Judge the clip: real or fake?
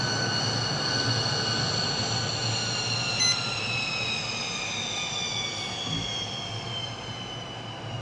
real